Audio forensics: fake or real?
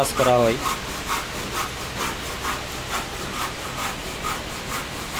real